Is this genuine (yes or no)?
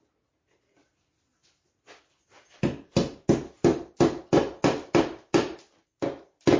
yes